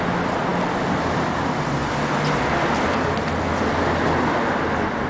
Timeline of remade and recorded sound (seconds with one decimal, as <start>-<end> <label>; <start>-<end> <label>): 0.0-5.1 recorded